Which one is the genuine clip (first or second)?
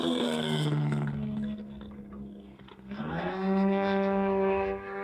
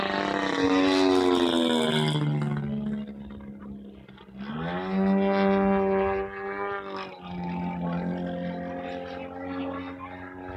second